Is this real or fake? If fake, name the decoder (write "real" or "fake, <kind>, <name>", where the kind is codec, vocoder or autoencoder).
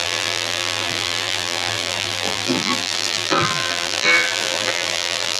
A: fake, vocoder, BigVGAN v2